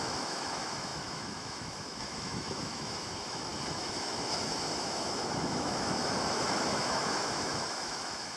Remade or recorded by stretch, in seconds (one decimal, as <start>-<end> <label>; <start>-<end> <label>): 0.0-8.4 remade